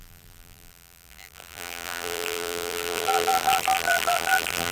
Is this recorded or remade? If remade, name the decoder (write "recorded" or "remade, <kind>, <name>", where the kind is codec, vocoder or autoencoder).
remade, vocoder, BigVGAN v2